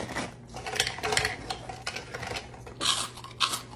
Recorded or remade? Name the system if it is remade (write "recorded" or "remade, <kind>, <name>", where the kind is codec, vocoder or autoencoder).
recorded